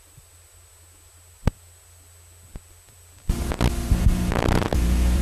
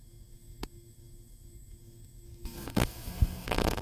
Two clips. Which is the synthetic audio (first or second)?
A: second